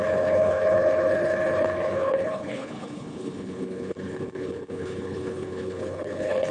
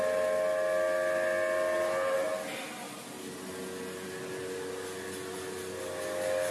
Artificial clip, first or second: first